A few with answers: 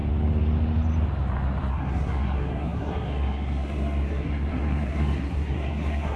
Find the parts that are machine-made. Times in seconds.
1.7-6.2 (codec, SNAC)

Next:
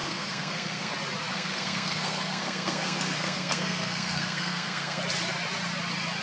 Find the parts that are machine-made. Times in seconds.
0.0-0.9 (codec, SNAC); 1.3-5.0

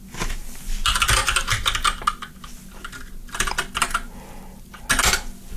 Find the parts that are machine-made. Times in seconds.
none

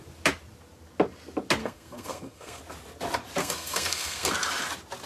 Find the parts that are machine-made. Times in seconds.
1.6-2.6 (codec, SNAC); 3.4-4.3